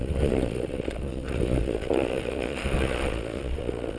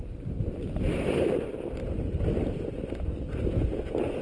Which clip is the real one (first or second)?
second